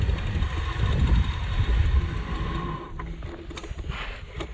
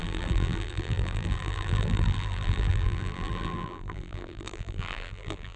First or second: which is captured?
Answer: first